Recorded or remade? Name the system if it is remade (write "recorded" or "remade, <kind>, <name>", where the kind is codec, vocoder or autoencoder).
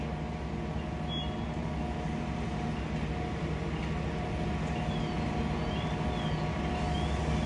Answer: recorded